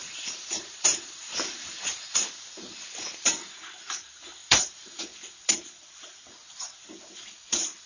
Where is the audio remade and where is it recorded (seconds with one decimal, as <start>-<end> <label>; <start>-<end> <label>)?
0.0-2.2 remade; 2.2-4.4 recorded; 4.4-5.0 remade; 5.0-7.9 recorded